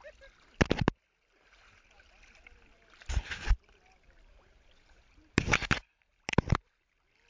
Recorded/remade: recorded